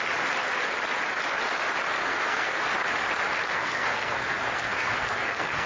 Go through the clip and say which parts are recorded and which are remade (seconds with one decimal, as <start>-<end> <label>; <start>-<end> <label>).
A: 0.0-2.0 recorded; 2.0-2.6 remade; 2.6-3.5 recorded; 3.5-5.7 remade